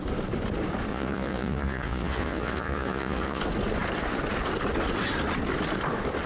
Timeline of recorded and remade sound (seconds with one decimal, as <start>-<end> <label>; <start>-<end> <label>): 0.0-0.9 recorded; 0.9-3.4 remade; 3.4-6.3 recorded

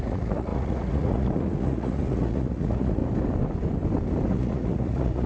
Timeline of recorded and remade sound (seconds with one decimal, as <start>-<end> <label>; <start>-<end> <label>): 0.0-3.0 remade; 3.0-4.3 recorded; 4.3-5.3 remade

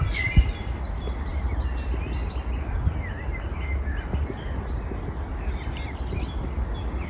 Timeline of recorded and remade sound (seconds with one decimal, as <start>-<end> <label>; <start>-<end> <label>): 0.0-7.1 recorded

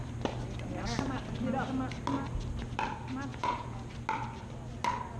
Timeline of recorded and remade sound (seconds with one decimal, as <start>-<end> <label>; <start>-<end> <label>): 0.0-3.3 recorded; 3.3-3.9 remade; 3.9-5.2 recorded

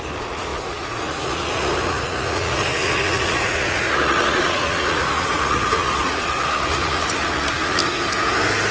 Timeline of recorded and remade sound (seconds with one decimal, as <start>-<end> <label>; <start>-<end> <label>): 0.0-7.8 remade; 7.8-8.7 recorded

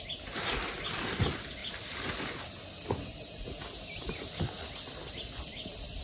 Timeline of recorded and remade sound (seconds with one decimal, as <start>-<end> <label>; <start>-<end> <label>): 0.0-6.0 recorded

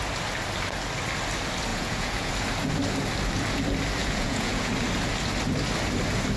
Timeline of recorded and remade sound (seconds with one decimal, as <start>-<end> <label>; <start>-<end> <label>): 0.0-1.7 recorded; 1.7-2.3 remade; 2.3-4.0 recorded; 4.0-4.7 remade; 4.7-6.4 recorded

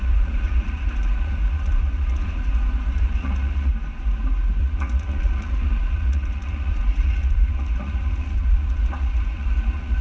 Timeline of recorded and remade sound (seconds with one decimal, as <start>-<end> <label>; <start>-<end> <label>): 0.0-3.7 remade; 3.7-4.6 recorded; 4.6-10.0 remade